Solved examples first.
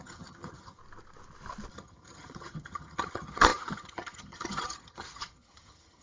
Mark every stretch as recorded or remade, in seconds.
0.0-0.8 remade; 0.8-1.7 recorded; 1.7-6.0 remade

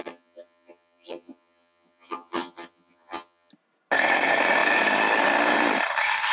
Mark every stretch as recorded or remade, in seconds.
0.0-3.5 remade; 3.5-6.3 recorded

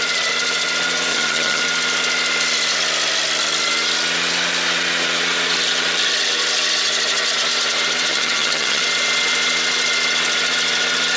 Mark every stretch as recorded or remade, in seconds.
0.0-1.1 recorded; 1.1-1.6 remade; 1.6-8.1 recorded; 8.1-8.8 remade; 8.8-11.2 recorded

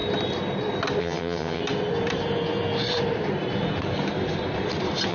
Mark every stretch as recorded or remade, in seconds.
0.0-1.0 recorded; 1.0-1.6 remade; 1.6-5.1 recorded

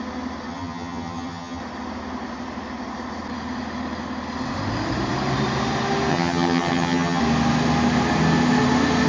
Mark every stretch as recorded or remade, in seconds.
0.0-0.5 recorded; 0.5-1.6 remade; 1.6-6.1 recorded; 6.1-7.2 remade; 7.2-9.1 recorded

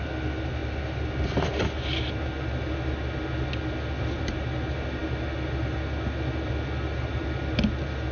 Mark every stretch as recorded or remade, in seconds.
0.0-8.1 recorded

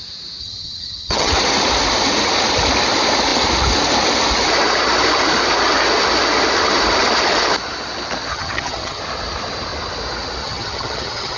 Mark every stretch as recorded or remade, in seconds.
0.0-0.4 recorded; 0.4-1.3 remade; 1.3-8.3 recorded; 8.3-9.0 remade; 9.0-10.4 recorded; 10.4-11.4 remade

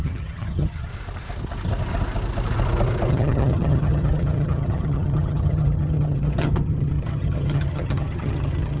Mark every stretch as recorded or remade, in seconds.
0.0-0.9 remade; 0.9-3.1 recorded; 3.1-8.8 remade